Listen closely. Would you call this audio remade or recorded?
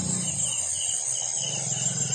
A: recorded